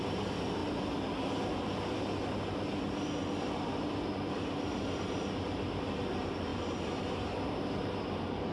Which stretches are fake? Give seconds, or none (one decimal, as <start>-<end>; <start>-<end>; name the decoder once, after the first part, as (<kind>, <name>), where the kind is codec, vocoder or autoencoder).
0.0-0.6 (vocoder, BigVGAN v2); 4.3-8.5